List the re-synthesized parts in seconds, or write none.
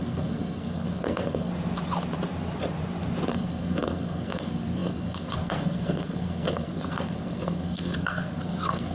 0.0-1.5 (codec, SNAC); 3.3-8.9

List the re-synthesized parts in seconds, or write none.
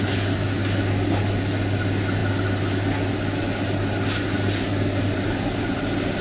none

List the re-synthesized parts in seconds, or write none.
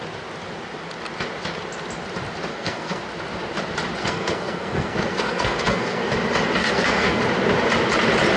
2.5-3.0 (codec, SNAC); 4.0-6.1; 6.6-7.2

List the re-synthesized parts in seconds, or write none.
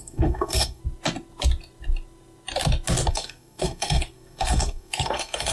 0.0-0.8 (codec, SNAC); 3.1-5.5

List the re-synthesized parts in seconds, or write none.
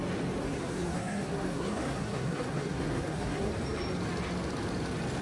0.4-3.5 (codec, SNAC)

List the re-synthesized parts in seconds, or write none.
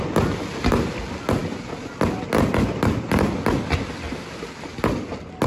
none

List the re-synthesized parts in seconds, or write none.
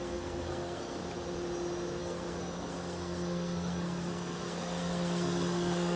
0.0-1.0 (codec, SNAC); 2.0-6.0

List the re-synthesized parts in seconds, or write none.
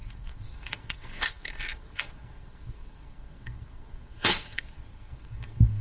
0.0-5.8 (codec, SNAC)